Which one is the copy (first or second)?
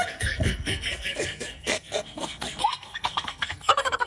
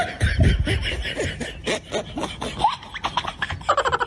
first